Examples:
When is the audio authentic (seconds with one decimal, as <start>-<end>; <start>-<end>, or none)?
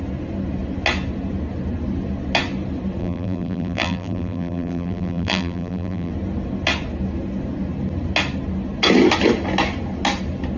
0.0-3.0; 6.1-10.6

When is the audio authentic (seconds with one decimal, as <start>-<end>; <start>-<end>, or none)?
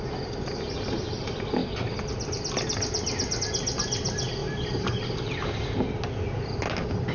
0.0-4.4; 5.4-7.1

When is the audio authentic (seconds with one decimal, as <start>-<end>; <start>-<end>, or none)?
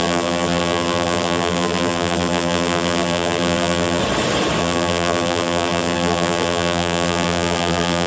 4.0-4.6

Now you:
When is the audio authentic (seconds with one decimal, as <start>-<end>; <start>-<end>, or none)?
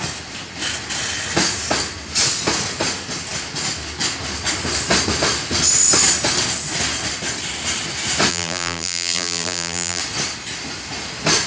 0.0-8.3; 10.0-11.5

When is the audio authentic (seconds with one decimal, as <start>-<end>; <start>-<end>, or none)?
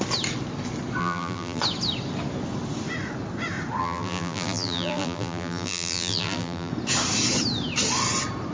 0.0-1.0; 1.6-3.8; 6.7-8.5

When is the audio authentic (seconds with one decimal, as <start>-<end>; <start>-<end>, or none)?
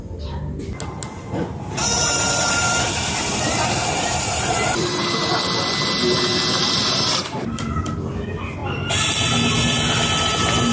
0.0-1.8; 5.4-6.6; 8.1-10.7